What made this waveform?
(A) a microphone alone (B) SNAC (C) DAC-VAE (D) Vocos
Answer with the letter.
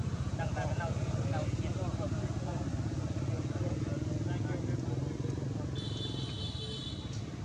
A